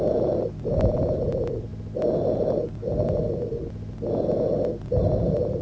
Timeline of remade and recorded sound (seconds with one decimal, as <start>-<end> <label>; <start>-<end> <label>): 0.0-5.6 recorded